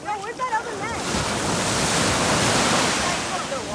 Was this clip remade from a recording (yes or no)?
no